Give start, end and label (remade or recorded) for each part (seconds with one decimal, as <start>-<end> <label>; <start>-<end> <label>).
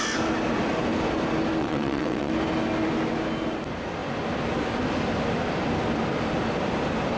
0.0-1.6 recorded; 1.6-2.3 remade; 2.3-7.2 recorded